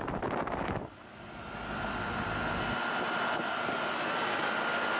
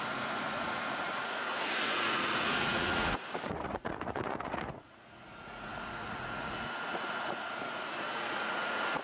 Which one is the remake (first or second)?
second